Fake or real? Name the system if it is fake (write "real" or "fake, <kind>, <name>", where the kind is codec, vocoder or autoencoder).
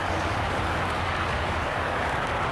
fake, codec, DAC